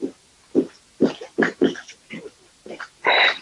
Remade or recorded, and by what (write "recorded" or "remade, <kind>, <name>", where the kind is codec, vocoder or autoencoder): recorded